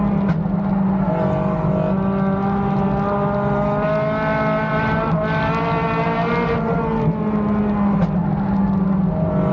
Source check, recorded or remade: recorded